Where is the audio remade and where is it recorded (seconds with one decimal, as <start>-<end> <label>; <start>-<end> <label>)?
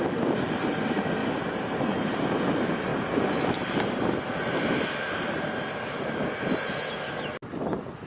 0.0-1.2 recorded; 1.2-1.8 remade; 1.8-2.9 recorded; 2.9-6.9 remade; 6.9-8.1 recorded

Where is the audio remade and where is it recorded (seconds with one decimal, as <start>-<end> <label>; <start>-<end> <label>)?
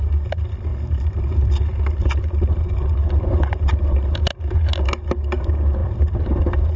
0.0-0.7 recorded; 0.7-4.8 remade; 4.8-5.8 recorded; 5.8-6.8 remade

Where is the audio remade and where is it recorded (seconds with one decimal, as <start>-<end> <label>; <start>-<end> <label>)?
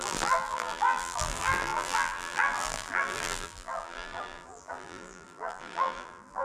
0.0-6.4 remade